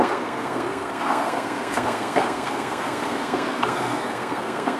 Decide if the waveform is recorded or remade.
remade